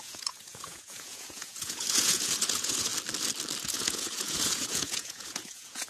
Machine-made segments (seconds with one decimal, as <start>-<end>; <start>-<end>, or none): 0.0-2.9; 3.6-5.9